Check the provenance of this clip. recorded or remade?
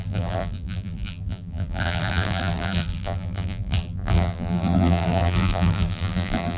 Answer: remade